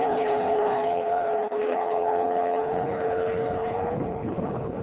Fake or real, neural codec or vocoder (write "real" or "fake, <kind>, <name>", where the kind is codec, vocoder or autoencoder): fake, codec, HILCodec